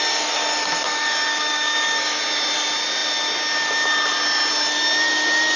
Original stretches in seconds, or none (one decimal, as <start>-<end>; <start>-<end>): 0.0-1.3; 2.2-5.6